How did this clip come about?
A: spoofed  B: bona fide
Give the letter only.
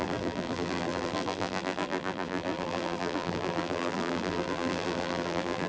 A